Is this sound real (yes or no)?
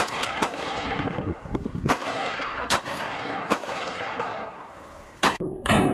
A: no